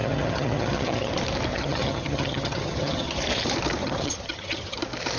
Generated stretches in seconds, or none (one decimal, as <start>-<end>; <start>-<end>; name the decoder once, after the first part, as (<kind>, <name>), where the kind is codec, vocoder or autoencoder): 0.0-1.1 (vocoder, HiFi-GAN); 1.5-3.2; 3.8-4.8